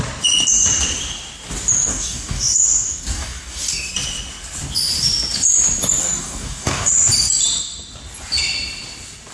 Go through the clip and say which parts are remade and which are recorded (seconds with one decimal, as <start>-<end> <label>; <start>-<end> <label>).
0.0-1.9 recorded; 1.9-3.9 remade; 3.9-6.0 recorded; 6.0-6.9 remade; 6.9-9.3 recorded

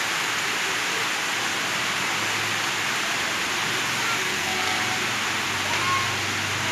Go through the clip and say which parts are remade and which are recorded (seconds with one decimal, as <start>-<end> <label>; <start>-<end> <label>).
0.0-4.2 recorded; 4.2-4.8 remade; 4.8-6.7 recorded

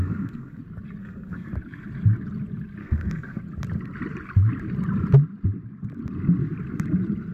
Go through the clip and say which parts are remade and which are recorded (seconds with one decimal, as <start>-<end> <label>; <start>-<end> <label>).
0.0-0.6 remade; 0.6-1.0 recorded; 1.0-1.5 remade; 1.5-2.8 recorded; 2.8-3.4 remade; 3.4-7.3 recorded

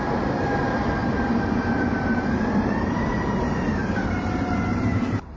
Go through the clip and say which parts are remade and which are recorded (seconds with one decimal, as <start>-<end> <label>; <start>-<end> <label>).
0.0-1.0 recorded; 1.0-4.2 remade; 4.2-4.7 recorded; 4.7-5.4 remade

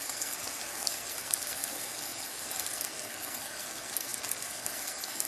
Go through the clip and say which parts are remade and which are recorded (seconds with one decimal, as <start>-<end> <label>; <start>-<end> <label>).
0.0-5.3 remade

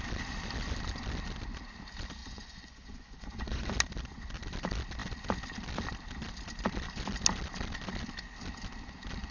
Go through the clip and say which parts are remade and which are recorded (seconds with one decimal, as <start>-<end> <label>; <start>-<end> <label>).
0.0-2.2 recorded; 2.2-3.7 remade; 3.7-9.3 recorded